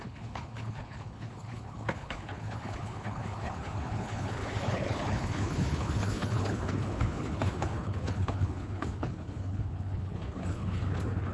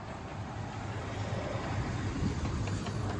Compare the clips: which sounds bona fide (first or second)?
second